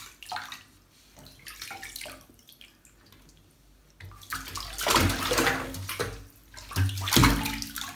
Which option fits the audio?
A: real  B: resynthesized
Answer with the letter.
A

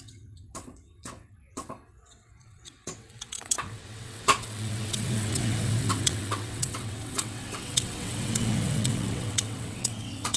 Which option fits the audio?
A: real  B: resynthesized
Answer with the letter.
B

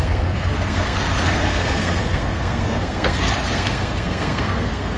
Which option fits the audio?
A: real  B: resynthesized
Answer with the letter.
B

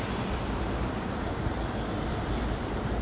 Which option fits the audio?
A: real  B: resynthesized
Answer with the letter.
B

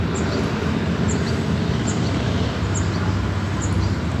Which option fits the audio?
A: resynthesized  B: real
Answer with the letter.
B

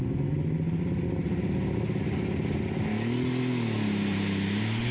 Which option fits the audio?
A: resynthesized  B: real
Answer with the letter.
B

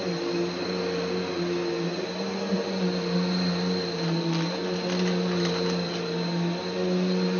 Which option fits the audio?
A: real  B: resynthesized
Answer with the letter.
A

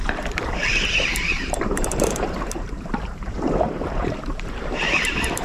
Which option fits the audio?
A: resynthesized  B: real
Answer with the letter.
A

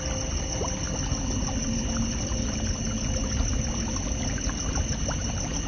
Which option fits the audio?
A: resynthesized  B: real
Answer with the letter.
B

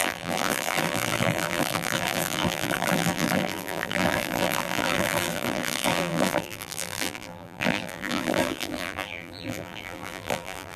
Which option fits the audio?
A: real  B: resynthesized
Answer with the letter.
B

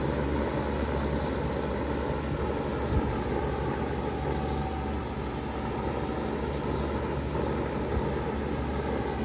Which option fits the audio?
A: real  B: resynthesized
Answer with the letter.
A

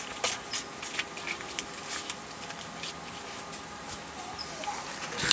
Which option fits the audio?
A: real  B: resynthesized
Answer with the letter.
A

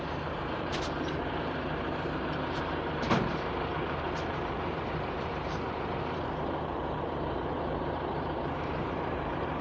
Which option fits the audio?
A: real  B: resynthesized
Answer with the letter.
B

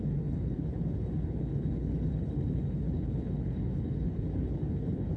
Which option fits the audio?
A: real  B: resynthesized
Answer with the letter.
B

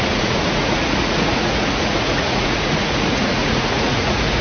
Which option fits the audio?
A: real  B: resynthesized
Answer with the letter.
B